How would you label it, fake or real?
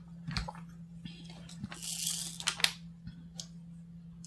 real